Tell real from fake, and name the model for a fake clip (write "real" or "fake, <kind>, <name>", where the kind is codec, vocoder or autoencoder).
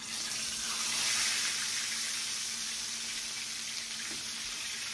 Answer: real